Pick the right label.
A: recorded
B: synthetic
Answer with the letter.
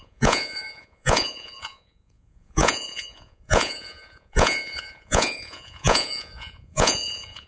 B